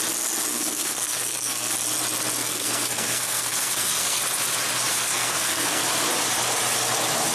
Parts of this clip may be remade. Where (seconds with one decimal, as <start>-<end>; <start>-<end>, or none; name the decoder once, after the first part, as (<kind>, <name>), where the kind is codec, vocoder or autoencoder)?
0.5-1.7 (codec, SNAC); 2.4-4.2; 4.9-5.8